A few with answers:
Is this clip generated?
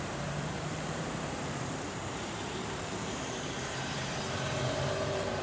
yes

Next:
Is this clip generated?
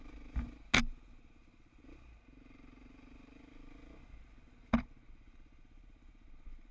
no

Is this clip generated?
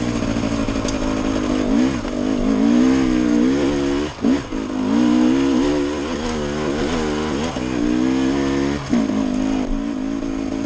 no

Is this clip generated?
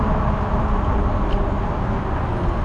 no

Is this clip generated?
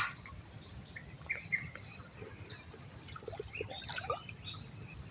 yes